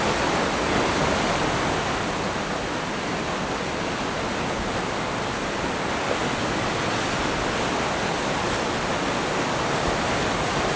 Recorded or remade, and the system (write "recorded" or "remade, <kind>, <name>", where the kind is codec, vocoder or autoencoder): recorded